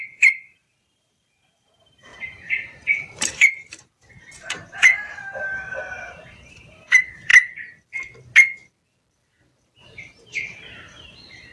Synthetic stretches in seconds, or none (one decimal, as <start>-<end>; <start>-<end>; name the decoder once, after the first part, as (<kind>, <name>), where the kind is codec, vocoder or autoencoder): 0.0-7.3 (vocoder, BigVGAN v2); 9.7-11.5